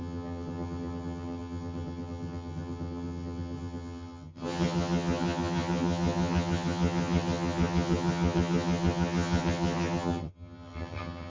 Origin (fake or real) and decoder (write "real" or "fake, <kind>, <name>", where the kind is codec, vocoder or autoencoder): fake, vocoder, HiFi-GAN